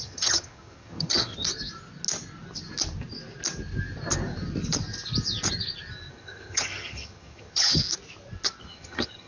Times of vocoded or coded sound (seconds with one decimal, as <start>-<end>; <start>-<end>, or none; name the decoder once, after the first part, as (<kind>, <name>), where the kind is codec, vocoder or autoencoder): 0.0-1.3 (vocoder, HiFi-GAN); 6.1-7.8; 8.6-9.3